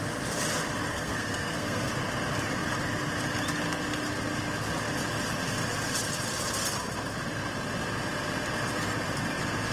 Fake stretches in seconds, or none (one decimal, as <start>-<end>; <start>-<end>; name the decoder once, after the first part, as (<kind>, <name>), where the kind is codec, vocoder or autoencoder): 0.9-1.9 (codec, SNAC)